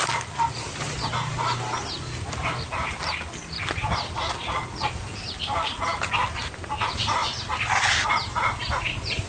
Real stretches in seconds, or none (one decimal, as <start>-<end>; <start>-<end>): 0.0-9.3